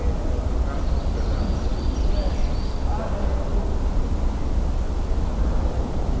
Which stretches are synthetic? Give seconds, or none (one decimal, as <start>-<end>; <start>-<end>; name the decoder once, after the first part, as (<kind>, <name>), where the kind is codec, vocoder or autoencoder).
none